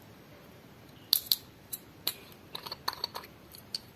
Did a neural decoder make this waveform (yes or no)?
yes